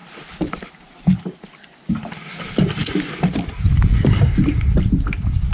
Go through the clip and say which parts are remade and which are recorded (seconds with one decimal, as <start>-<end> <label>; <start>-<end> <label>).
0.0-5.5 recorded